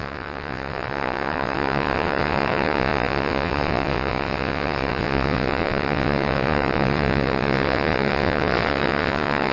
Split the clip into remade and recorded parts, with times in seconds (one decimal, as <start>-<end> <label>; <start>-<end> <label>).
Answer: 0.0-9.5 remade